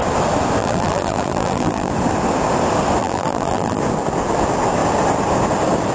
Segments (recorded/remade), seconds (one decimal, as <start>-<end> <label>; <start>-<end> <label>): 0.0-0.6 recorded; 0.6-1.9 remade; 1.9-3.0 recorded; 3.0-3.8 remade; 3.8-5.9 recorded

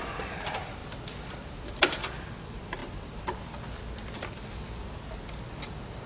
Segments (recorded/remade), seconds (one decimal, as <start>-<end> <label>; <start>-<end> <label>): 0.0-0.8 remade; 0.8-1.8 recorded; 1.8-2.8 remade; 2.8-6.1 recorded

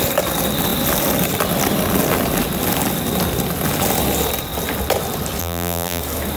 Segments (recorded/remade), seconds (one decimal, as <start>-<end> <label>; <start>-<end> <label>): 0.0-5.4 recorded; 5.4-6.0 remade; 6.0-6.4 recorded